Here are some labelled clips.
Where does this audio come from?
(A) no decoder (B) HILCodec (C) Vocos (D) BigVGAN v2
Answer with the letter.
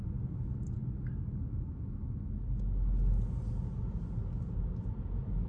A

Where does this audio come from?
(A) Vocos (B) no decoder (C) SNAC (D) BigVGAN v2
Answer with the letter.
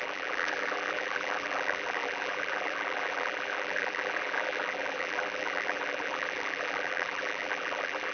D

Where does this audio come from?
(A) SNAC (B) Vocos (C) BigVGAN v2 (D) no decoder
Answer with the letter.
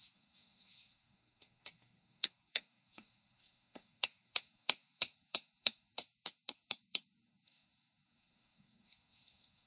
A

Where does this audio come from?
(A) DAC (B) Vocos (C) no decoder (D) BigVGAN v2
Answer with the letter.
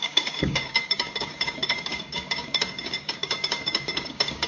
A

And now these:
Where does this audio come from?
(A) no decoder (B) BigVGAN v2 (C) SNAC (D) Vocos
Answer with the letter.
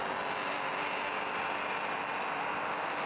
A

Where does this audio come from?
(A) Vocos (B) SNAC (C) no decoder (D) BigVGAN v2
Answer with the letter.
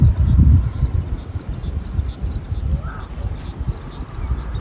C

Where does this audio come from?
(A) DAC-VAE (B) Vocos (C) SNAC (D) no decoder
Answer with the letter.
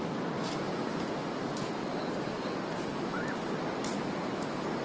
D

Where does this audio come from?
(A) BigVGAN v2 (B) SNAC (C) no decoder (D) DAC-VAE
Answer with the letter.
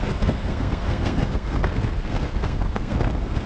B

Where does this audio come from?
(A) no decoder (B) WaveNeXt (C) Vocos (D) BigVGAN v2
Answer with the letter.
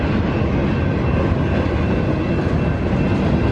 A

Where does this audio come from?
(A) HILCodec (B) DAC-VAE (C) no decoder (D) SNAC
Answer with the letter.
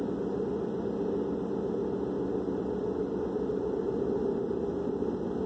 C